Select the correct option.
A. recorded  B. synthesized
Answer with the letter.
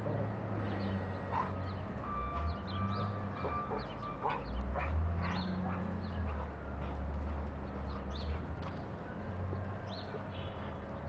A